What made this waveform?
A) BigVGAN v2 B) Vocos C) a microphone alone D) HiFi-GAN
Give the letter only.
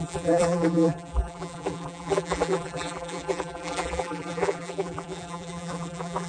A